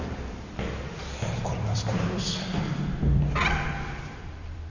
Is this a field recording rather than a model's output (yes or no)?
no